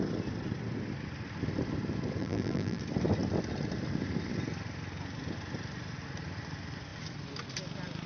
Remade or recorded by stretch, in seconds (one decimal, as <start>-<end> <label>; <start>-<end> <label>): 0.0-2.2 recorded; 2.2-2.8 remade; 2.8-8.1 recorded